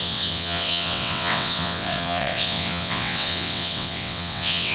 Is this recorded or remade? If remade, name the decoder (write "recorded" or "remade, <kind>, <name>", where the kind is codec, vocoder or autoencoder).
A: remade, vocoder, WaveNeXt